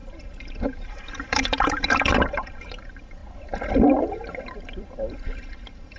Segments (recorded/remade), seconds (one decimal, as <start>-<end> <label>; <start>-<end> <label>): 0.0-3.2 remade; 3.2-4.0 recorded; 4.0-6.0 remade